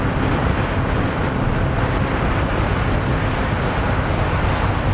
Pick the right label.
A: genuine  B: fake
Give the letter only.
A